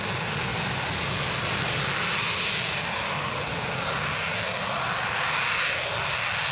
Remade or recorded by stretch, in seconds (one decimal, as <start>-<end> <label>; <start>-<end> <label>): 0.0-6.5 recorded